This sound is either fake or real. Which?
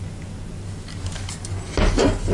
real